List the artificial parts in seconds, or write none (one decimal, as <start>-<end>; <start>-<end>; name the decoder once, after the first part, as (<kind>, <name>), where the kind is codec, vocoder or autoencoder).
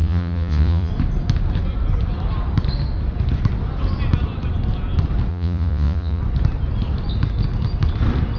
0.0-0.9 (vocoder, Vocos); 5.3-6.2